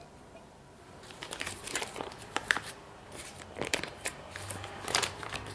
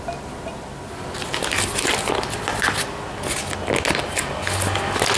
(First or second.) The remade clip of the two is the first